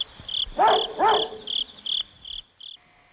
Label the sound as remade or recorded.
recorded